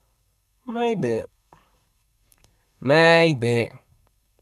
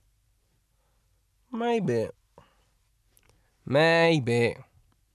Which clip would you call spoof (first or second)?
first